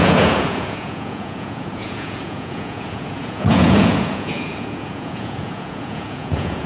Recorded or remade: remade